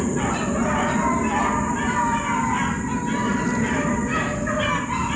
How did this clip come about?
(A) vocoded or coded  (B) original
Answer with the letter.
B